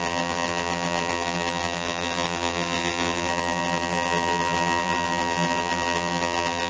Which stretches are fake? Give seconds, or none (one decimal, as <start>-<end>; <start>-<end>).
0.0-6.7